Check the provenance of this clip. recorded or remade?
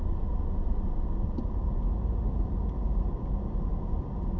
recorded